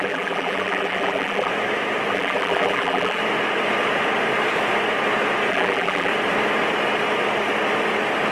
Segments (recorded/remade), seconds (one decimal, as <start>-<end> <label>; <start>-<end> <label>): 0.0-1.5 remade; 1.5-2.1 recorded; 2.1-3.2 remade; 3.2-5.5 recorded; 5.5-6.1 remade; 6.1-8.3 recorded